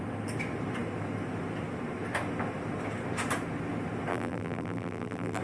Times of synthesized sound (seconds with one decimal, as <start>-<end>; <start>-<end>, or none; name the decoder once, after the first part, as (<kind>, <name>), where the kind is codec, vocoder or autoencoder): 4.1-5.4 (vocoder, BigVGAN v2)